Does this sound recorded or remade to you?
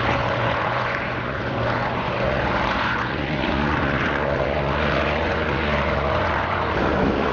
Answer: remade